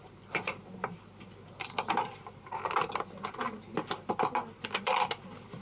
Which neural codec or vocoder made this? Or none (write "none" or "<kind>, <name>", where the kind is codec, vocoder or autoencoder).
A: none